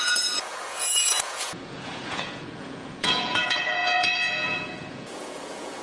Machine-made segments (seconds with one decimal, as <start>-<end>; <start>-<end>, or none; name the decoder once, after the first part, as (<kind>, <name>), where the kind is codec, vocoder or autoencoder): 0.0-5.8 (vocoder, Vocos)